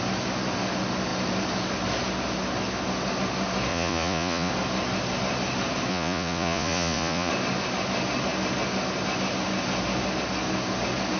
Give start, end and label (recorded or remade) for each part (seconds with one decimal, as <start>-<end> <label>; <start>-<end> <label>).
0.0-3.7 recorded; 3.7-4.5 remade; 4.5-5.9 recorded; 5.9-7.3 remade; 7.3-11.2 recorded